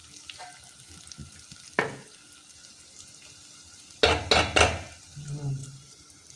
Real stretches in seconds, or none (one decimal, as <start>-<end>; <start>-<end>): 0.6-5.6